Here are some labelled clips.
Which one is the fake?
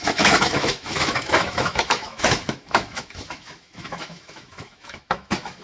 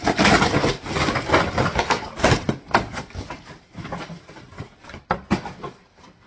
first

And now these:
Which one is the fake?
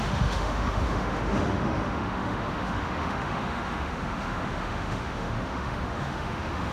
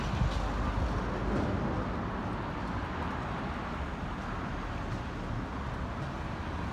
first